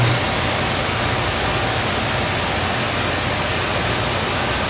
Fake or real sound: real